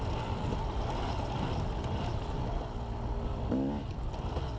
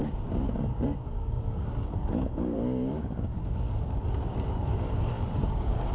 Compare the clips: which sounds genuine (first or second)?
first